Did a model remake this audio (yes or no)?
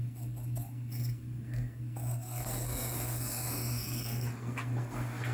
yes